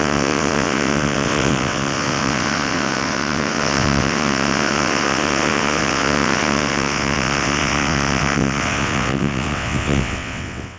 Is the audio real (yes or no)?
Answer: no